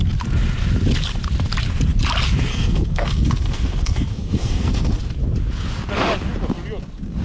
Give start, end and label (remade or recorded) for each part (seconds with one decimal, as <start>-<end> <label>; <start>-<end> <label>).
0.0-2.5 recorded; 2.5-5.0 remade; 5.0-7.2 recorded